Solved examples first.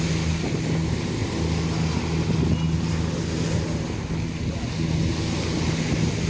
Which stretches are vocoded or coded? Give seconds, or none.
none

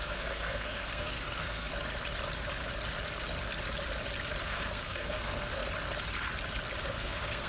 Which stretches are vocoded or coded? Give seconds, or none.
0.0-1.7 (codec, SNAC); 4.4-5.6; 6.8-7.5

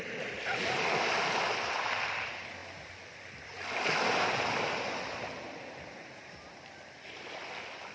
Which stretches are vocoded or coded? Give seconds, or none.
none

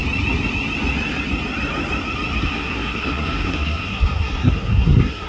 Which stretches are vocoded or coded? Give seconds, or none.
2.4-5.3 (codec, SNAC)